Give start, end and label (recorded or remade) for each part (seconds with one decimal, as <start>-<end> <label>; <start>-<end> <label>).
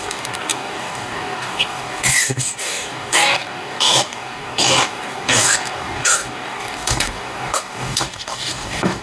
0.0-9.0 remade